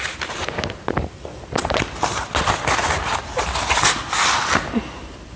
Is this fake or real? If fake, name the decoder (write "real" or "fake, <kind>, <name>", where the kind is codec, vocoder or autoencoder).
real